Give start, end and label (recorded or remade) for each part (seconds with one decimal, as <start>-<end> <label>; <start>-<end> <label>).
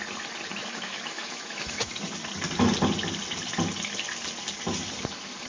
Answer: 0.0-0.6 recorded; 0.6-2.0 remade; 2.0-5.5 recorded